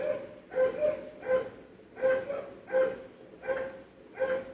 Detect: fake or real real